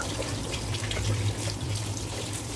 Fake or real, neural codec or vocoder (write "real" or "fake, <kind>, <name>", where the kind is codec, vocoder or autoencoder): fake, vocoder, BigVGAN v2